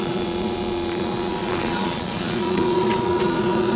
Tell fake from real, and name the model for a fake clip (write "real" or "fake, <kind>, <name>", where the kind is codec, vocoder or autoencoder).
fake, vocoder, Vocos